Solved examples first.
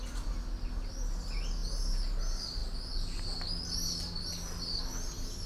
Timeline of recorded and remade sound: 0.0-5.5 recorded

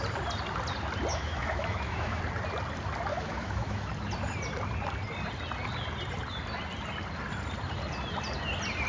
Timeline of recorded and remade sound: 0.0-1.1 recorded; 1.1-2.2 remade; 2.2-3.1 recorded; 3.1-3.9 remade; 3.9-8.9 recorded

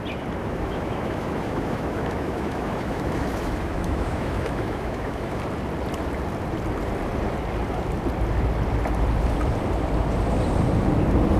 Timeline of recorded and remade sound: 0.0-0.4 recorded; 0.4-5.4 remade; 5.4-11.4 recorded

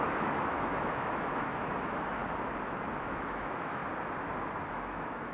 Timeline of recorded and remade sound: 0.0-2.2 remade; 2.2-3.0 recorded; 3.0-3.8 remade; 3.8-4.7 recorded; 4.7-5.3 remade

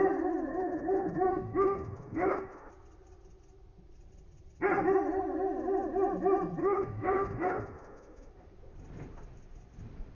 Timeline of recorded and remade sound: 0.0-0.5 recorded; 0.5-2.7 remade; 2.7-6.6 recorded; 6.6-8.3 remade; 8.3-10.1 recorded

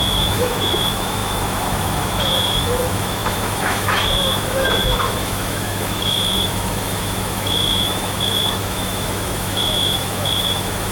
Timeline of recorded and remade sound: 0.0-10.9 remade